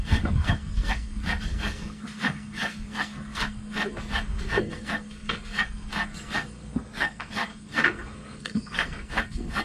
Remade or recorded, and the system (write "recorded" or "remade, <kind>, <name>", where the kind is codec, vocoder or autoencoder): remade, codec, SNAC